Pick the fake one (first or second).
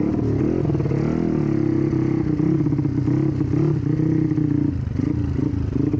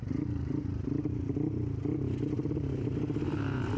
second